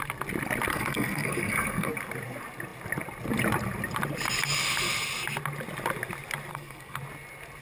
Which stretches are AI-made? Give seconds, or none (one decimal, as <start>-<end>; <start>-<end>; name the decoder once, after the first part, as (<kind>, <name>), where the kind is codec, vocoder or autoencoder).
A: 0.7-1.9 (codec, SNAC); 6.5-7.0